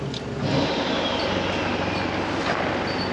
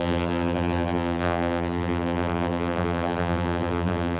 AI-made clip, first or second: second